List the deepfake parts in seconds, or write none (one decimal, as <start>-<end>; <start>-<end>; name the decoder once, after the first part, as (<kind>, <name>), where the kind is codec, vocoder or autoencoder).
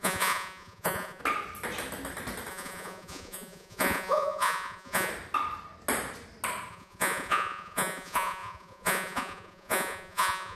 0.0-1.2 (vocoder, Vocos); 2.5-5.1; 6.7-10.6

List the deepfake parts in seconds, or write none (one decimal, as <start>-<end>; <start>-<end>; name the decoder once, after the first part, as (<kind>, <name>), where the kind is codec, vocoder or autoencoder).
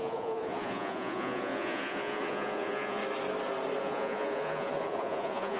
0.0-3.0 (vocoder, Vocos); 3.8-5.6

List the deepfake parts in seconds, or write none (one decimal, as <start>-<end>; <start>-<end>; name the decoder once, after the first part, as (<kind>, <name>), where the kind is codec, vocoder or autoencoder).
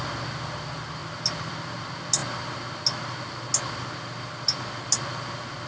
none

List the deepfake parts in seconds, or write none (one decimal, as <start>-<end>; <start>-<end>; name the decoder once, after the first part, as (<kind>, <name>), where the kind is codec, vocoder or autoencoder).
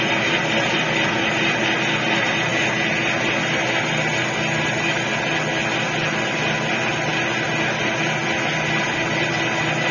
none